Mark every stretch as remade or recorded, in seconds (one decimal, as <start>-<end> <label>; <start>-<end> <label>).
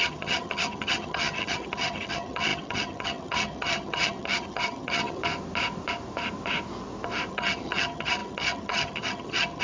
0.0-5.2 remade; 5.2-7.3 recorded; 7.3-9.6 remade